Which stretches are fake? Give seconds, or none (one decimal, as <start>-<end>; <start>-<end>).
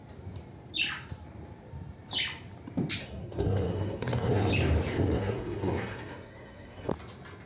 3.0-4.5; 4.9-6.9